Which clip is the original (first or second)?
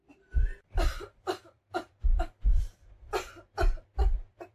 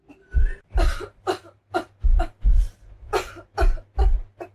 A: second